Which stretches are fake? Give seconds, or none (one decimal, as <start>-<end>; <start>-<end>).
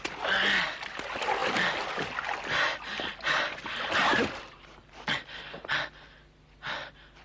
none